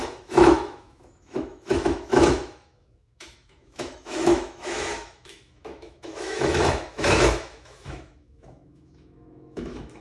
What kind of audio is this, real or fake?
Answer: fake